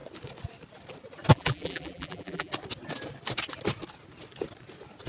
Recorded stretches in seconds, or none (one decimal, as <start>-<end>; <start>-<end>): 0.0-1.3; 2.5-5.1